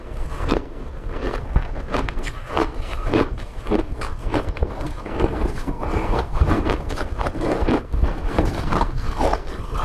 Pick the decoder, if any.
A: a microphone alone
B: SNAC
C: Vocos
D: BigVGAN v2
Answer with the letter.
B